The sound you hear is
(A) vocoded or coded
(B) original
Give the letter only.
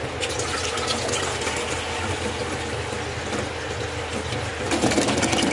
B